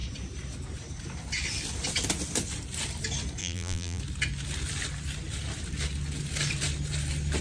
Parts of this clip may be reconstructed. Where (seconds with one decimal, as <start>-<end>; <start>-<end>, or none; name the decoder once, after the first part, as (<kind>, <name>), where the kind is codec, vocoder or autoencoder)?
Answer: 3.4-4.0 (vocoder, BigVGAN v2)